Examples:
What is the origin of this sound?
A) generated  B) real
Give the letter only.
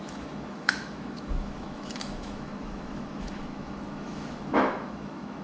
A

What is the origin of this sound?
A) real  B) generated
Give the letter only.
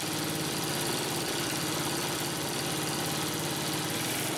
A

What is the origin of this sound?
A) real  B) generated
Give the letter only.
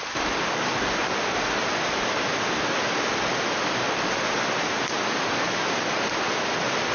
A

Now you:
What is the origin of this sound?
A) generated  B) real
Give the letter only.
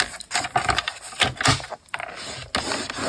B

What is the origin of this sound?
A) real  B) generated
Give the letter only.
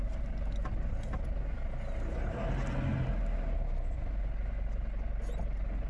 A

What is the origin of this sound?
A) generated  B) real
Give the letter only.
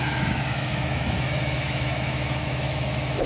A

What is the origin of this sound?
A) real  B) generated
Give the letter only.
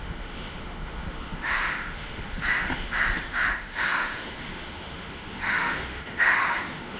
B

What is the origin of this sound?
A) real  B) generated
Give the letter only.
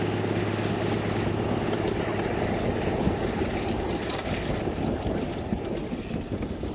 A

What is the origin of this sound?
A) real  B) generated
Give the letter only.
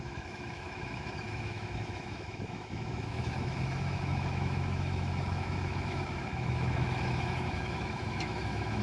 B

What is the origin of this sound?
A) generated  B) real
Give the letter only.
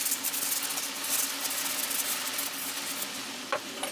B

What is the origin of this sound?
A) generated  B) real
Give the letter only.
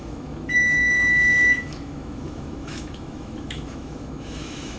A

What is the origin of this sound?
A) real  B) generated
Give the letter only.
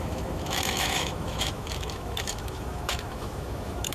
B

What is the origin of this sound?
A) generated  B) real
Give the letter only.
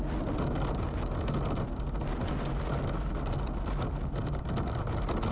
B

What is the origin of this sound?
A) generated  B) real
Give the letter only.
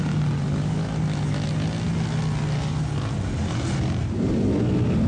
B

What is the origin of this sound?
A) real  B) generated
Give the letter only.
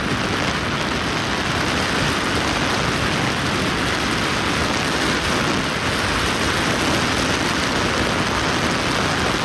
A